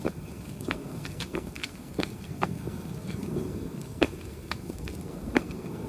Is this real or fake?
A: fake